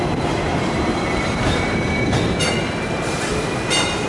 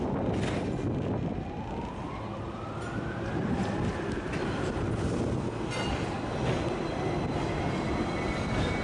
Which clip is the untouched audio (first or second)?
second